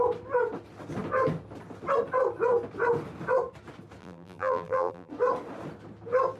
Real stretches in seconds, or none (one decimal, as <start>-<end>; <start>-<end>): 0.0-4.0; 5.1-6.4